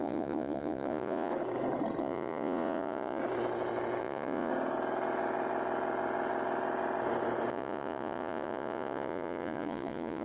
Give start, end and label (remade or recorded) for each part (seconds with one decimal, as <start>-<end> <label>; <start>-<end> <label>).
0.0-1.3 remade; 1.3-2.0 recorded; 2.0-3.2 remade; 3.2-4.0 recorded; 4.0-4.5 remade; 4.5-7.5 recorded; 7.5-10.2 remade